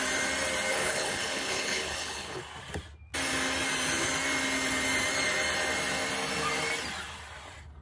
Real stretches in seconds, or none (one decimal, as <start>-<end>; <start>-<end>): 0.0-0.7; 2.4-7.8